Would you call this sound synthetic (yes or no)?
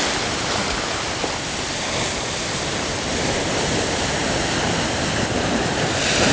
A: no